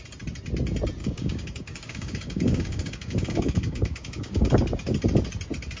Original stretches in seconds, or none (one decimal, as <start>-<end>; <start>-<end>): 0.0-1.0; 4.5-5.8